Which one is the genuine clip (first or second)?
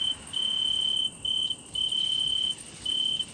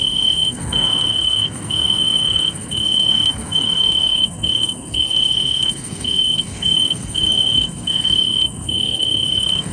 first